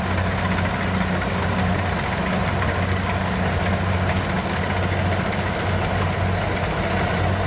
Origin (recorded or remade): recorded